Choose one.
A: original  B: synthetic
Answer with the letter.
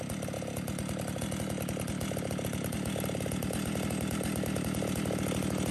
A